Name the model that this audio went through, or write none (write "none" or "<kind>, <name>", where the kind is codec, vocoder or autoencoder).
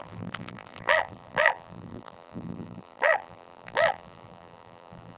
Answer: vocoder, BigVGAN v2